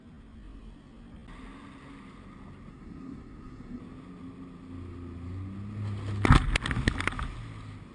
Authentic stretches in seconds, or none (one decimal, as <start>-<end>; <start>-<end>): 0.0-2.7; 3.8-7.9